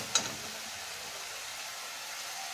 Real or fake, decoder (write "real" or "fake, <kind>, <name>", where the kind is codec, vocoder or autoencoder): real